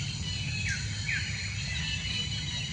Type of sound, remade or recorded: recorded